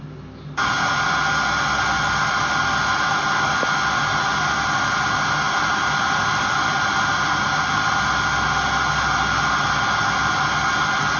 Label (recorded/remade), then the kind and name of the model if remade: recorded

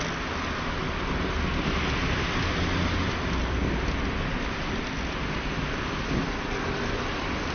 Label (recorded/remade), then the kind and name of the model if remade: recorded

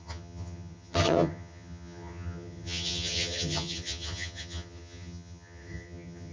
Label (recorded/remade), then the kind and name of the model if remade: remade, vocoder, HiFi-GAN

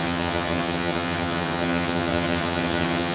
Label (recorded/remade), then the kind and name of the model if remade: remade, vocoder, HiFi-GAN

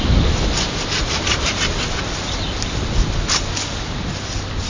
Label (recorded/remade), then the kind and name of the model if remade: recorded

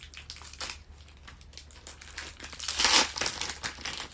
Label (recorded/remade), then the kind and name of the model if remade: recorded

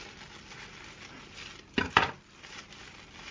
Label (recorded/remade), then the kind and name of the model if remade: recorded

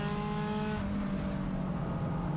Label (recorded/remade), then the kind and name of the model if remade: recorded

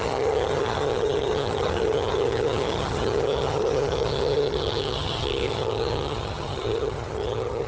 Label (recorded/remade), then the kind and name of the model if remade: remade, vocoder, HiFi-GAN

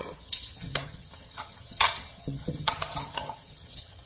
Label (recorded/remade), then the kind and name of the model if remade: remade, vocoder, HiFi-GAN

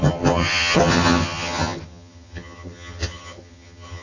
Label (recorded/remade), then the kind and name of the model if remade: remade, vocoder, HiFi-GAN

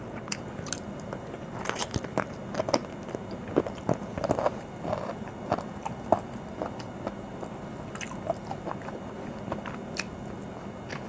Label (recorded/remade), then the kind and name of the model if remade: recorded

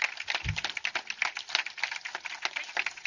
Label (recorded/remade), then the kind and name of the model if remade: recorded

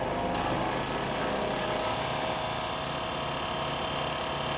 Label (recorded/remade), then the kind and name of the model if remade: recorded